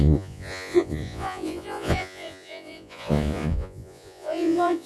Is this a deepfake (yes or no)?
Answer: yes